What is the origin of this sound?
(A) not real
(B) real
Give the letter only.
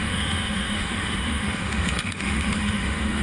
A